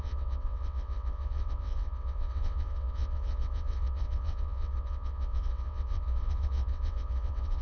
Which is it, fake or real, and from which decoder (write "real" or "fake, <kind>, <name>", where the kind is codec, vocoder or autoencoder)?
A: fake, vocoder, WaveNeXt